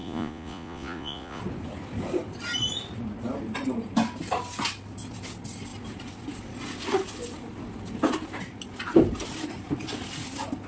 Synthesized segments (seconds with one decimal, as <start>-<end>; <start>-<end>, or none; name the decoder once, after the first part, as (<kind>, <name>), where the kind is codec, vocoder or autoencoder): 0.0-1.4 (vocoder, Vocos)